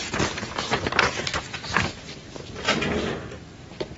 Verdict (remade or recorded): recorded